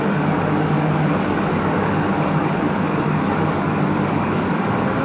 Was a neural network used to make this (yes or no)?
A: yes